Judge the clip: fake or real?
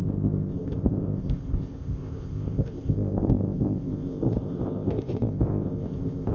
fake